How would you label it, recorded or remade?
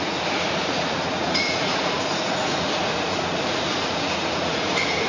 remade